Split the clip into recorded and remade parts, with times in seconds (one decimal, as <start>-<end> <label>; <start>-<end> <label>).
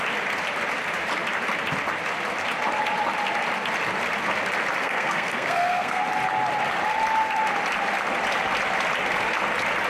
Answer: 0.0-4.8 recorded; 4.8-6.0 remade; 6.0-9.9 recorded